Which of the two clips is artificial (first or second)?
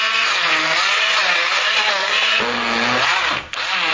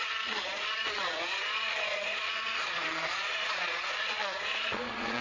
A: second